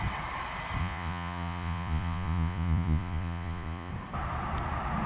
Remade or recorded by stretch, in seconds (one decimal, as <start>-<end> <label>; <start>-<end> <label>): 0.0-0.8 recorded; 0.8-3.9 remade; 3.9-5.1 recorded